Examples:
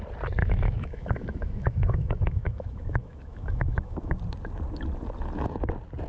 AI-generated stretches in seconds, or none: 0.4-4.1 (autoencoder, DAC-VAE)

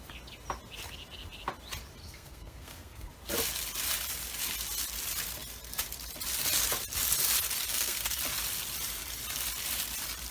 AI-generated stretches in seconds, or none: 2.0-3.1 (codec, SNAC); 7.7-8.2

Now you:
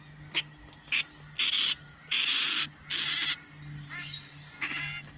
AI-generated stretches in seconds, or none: none

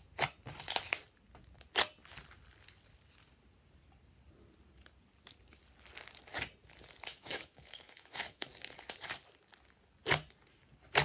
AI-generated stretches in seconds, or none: 7.1-8.5 (autoencoder, DAC-VAE)

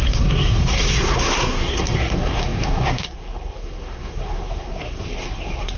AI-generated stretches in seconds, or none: 0.0-5.8 (codec, SNAC)

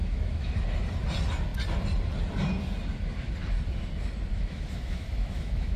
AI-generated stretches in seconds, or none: 0.0-0.5 (autoencoder, DAC-VAE); 4.3-5.8

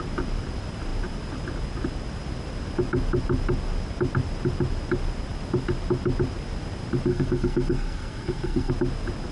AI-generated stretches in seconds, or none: 7.1-8.7 (codec, SNAC)

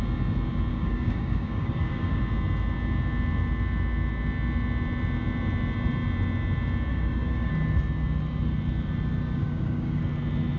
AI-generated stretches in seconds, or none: 0.7-2.2 (codec, DAC); 6.9-7.5; 9.4-10.0